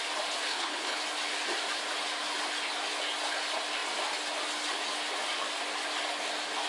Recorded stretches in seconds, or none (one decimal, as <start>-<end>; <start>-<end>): 0.0-0.5; 1.0-6.7